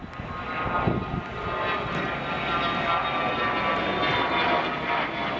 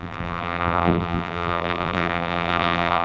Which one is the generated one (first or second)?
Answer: second